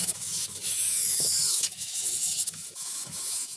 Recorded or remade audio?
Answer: remade